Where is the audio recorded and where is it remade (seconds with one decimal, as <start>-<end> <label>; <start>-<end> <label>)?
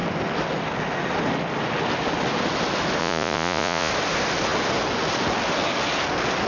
0.0-3.0 recorded; 3.0-3.9 remade; 3.9-6.5 recorded